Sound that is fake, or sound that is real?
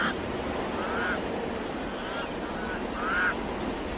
real